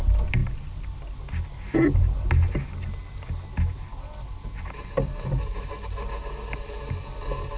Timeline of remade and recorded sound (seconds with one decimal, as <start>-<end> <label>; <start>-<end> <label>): 0.0-7.6 recorded